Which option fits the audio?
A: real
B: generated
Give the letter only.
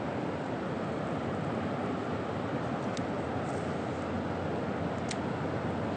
A